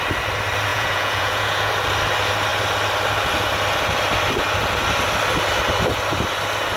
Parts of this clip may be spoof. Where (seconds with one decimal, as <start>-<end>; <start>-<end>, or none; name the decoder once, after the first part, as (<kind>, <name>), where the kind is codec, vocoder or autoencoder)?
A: 0.7-1.7 (vocoder, Vocos)